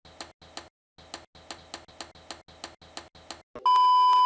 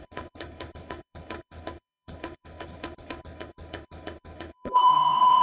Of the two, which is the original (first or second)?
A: first